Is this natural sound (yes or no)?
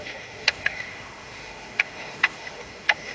no